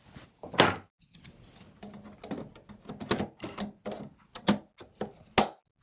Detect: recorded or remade recorded